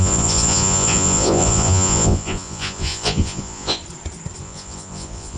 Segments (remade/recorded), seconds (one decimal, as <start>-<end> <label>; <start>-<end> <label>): 0.0-3.8 remade; 3.8-4.4 recorded; 4.4-5.4 remade